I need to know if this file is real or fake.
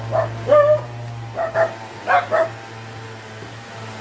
real